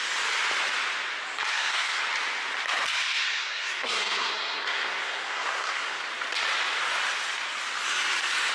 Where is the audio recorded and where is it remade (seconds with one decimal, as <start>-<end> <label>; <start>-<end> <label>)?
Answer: 0.0-1.5 recorded; 1.5-2.0 remade; 2.0-2.9 recorded; 2.9-6.0 remade; 6.0-8.5 recorded

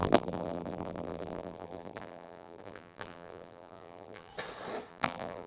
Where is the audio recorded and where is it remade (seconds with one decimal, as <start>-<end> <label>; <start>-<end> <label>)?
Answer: 0.0-4.3 remade; 4.3-4.9 recorded; 4.9-5.5 remade

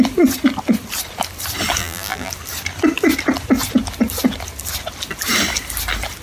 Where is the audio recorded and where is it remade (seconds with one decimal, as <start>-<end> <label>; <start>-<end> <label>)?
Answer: 0.0-1.8 recorded; 1.8-2.3 remade; 2.3-6.2 recorded

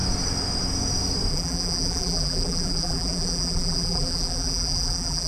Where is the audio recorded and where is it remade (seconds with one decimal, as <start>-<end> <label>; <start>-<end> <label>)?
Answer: 0.0-1.3 recorded; 1.3-5.3 remade

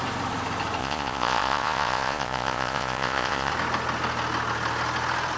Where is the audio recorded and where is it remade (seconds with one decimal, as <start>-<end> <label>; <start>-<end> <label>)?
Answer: 0.0-0.8 recorded; 0.8-3.5 remade; 3.5-5.4 recorded

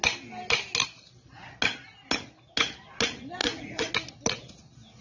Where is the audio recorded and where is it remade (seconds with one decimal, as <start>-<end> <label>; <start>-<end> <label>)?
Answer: 0.0-3.4 recorded; 3.4-3.9 remade; 3.9-5.0 recorded